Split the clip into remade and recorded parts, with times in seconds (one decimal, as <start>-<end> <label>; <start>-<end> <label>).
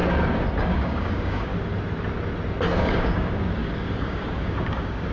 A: 0.0-0.6 recorded; 0.6-1.5 remade; 1.5-2.8 recorded; 2.8-5.1 remade